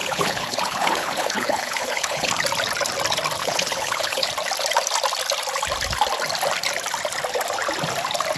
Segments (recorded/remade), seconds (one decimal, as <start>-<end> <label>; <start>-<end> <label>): 0.0-2.3 remade; 2.3-3.4 recorded; 3.4-4.3 remade; 4.3-8.4 recorded